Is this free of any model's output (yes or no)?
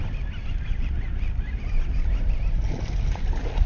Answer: yes